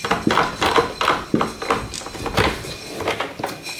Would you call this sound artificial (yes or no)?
no